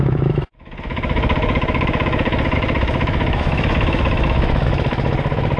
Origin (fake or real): fake